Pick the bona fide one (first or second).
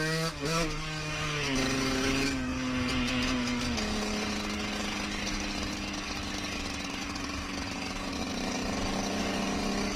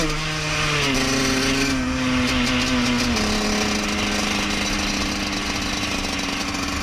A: second